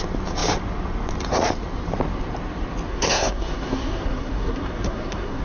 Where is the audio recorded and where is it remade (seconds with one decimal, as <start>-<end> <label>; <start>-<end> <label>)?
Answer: 0.0-2.9 recorded; 2.9-5.4 remade